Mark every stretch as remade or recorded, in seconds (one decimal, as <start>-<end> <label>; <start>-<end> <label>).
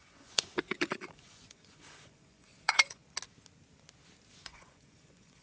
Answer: 0.0-3.0 remade; 3.0-4.3 recorded; 4.3-5.4 remade